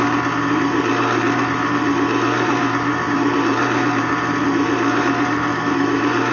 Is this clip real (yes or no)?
no